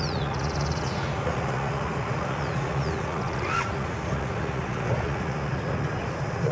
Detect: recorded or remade remade